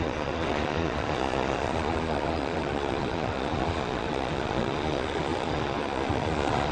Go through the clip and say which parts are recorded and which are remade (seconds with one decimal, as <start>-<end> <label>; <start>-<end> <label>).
0.0-6.7 remade